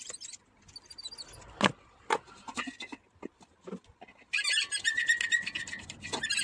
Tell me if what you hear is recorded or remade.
recorded